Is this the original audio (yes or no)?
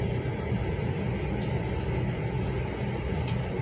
yes